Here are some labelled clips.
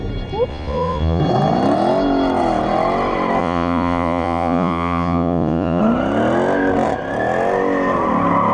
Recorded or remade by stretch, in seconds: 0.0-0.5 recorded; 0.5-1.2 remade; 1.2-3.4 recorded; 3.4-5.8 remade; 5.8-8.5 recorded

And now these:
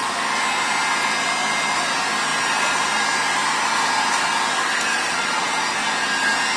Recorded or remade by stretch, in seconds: 0.0-4.9 recorded; 4.9-5.5 remade; 5.5-6.6 recorded

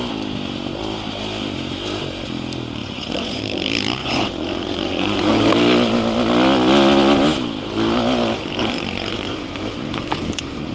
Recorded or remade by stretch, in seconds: 0.0-2.8 recorded; 2.8-3.4 remade; 3.4-4.0 recorded; 4.0-5.5 remade; 5.5-8.6 recorded; 8.6-10.7 remade

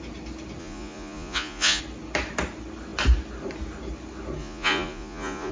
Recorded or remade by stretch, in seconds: 0.0-0.6 recorded; 0.6-1.8 remade; 1.8-4.4 recorded; 4.4-5.5 remade

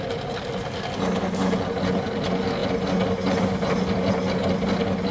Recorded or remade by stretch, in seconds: 0.0-5.1 recorded

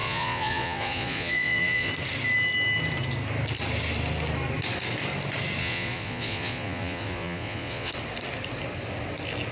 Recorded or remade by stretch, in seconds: 0.0-1.9 remade; 1.9-5.6 recorded; 5.6-7.9 remade; 7.9-9.5 recorded

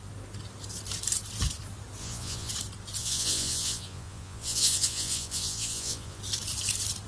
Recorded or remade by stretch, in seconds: 0.0-2.0 recorded; 2.0-2.5 remade; 2.5-3.0 recorded; 3.0-6.2 remade; 6.2-7.1 recorded

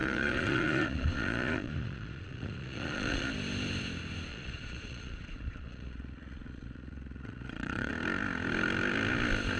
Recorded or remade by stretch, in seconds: 0.0-3.3 remade; 3.3-4.3 recorded; 4.3-7.9 remade; 7.9-9.6 recorded